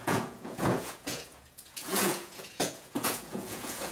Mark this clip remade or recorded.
remade